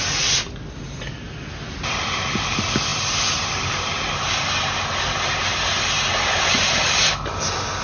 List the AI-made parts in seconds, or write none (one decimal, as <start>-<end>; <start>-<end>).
none